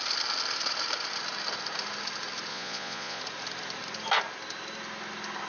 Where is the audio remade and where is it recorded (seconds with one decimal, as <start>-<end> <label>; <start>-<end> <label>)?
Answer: 0.0-2.5 recorded; 2.5-3.2 remade; 3.2-5.5 recorded